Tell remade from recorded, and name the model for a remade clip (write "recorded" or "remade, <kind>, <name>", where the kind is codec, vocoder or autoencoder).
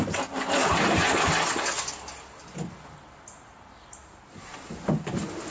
recorded